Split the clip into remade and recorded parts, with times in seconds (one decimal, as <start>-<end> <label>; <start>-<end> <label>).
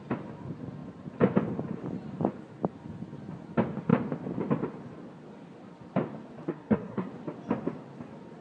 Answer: 0.0-6.5 recorded; 6.5-7.1 remade; 7.1-8.4 recorded